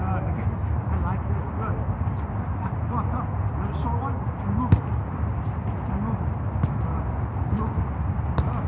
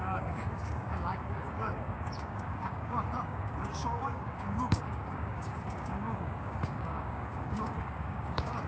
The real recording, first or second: first